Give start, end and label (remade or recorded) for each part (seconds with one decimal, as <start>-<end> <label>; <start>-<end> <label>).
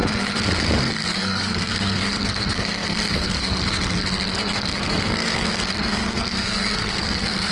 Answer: 0.0-0.8 recorded; 0.8-7.5 remade